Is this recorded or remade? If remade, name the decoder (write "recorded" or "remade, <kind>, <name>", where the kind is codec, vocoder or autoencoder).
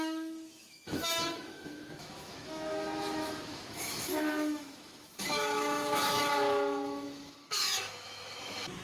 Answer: remade, autoencoder, DAC-VAE